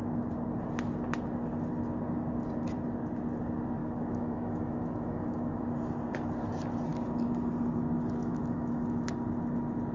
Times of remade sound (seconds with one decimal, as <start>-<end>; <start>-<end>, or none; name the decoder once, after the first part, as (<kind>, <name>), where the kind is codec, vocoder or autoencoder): 3.8-5.6 (autoencoder, DAC-VAE); 8.2-9.1